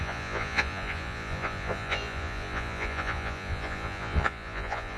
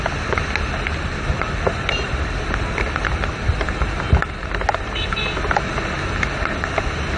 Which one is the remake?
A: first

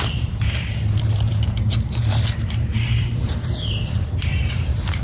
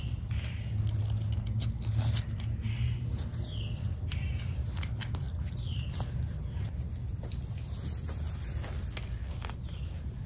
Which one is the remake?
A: first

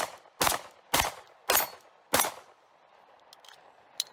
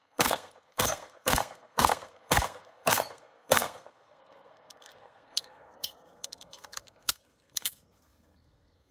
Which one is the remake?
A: second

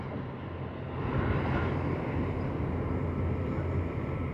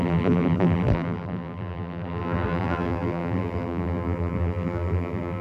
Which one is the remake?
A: second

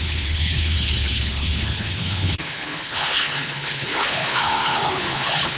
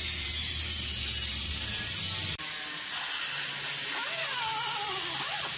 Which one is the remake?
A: first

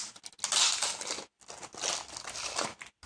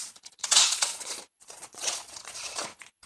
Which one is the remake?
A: second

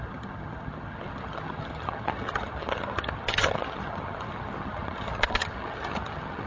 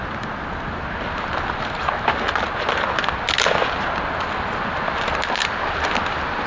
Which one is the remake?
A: first